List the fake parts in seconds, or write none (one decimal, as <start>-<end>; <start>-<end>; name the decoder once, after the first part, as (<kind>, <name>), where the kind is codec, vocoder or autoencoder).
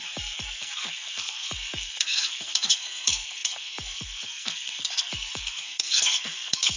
0.0-6.8 (codec, SNAC)